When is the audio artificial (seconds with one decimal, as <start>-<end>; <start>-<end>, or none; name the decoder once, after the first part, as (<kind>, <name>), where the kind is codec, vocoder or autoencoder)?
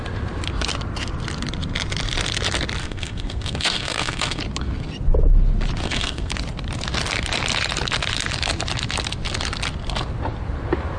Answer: 2.8-4.4 (codec, SNAC); 5.8-6.3